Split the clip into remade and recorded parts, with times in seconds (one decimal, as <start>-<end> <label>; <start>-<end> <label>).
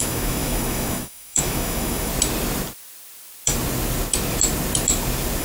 0.0-2.1 remade; 2.1-5.4 recorded